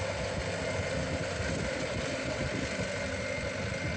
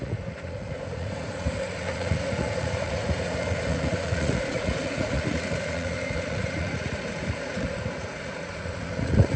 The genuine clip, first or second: first